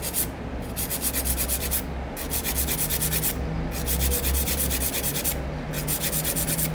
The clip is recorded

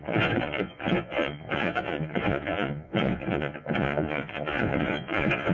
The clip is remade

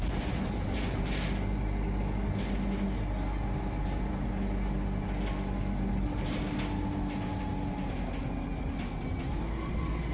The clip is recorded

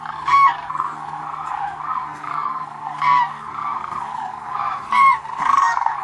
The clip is remade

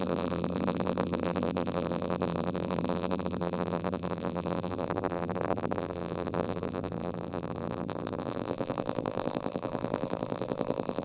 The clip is remade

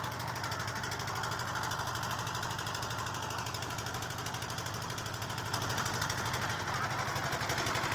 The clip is recorded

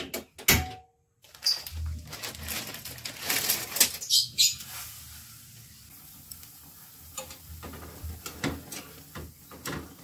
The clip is recorded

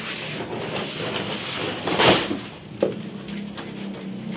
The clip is recorded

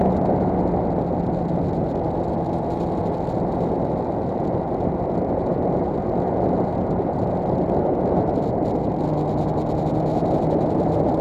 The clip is recorded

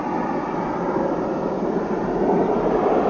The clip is recorded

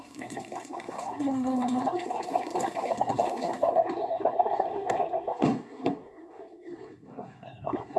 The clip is remade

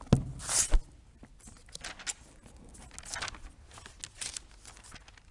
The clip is recorded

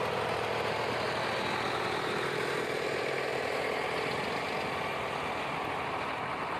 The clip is recorded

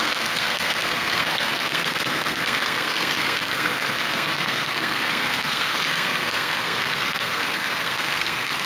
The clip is remade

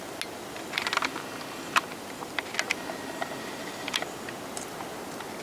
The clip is recorded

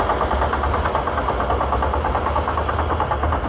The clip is recorded